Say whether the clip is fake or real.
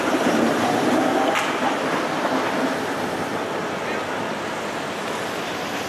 real